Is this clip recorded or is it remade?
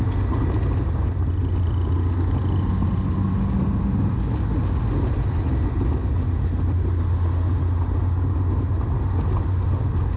recorded